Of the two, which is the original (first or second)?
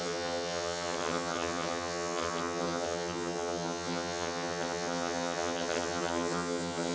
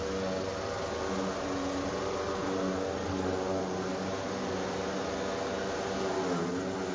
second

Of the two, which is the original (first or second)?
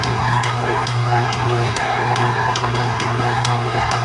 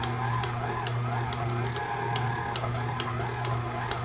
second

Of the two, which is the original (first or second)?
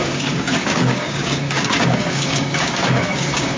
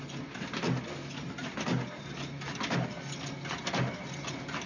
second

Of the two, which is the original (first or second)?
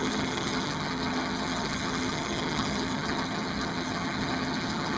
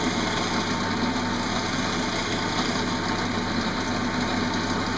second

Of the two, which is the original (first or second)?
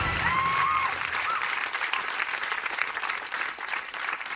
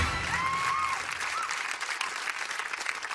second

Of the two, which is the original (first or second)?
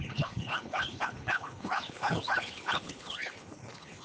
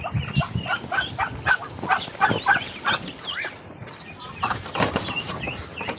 second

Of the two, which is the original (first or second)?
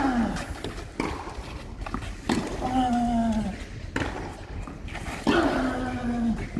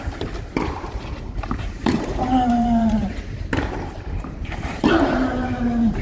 first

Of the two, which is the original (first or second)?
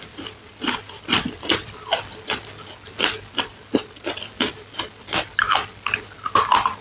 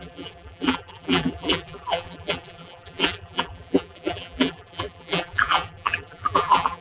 first